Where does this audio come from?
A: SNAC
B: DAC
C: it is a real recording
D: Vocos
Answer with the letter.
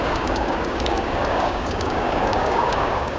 B